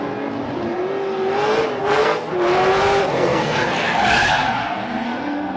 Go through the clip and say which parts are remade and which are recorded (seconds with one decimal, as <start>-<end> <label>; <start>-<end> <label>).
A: 0.0-1.8 recorded; 1.8-2.3 remade; 2.3-3.0 recorded; 3.0-5.6 remade